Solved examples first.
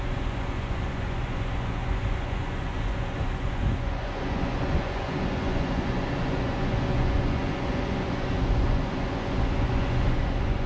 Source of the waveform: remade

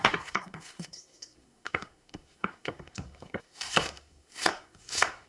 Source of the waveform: remade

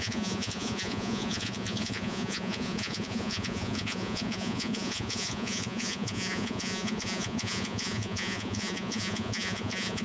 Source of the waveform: remade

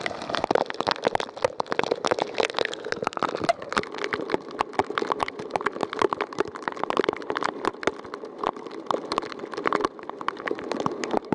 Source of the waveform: recorded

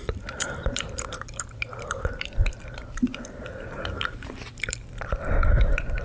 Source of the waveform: remade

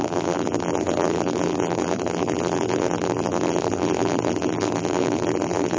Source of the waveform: remade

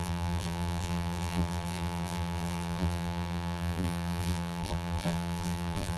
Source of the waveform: remade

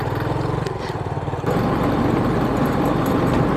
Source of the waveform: recorded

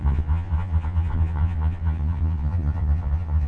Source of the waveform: remade